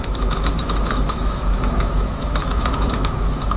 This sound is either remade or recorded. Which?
remade